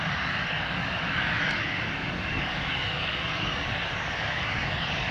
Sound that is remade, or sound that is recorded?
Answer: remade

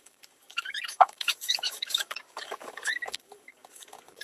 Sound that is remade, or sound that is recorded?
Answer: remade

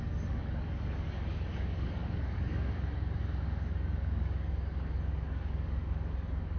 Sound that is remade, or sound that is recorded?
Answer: remade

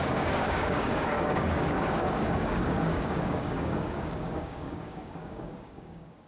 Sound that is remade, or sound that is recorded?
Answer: remade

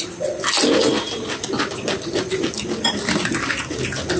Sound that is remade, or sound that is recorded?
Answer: recorded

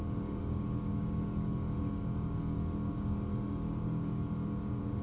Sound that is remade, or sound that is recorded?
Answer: remade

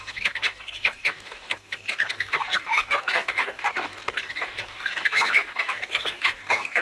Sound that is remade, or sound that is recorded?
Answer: remade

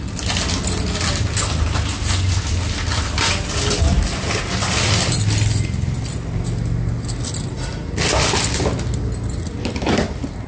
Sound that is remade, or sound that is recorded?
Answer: recorded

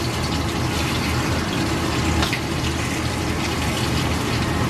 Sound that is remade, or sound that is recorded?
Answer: recorded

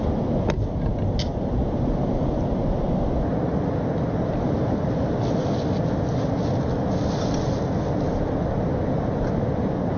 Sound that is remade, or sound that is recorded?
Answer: recorded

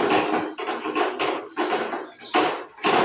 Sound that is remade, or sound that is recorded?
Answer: recorded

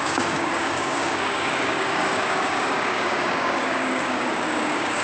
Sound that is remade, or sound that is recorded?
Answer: remade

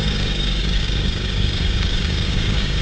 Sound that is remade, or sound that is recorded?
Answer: remade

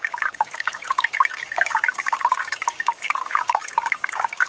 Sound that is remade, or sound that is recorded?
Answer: remade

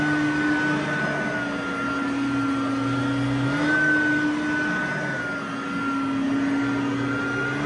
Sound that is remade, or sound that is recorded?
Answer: recorded